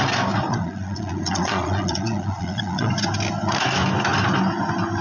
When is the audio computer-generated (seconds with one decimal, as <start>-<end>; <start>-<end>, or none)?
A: 0.5-2.9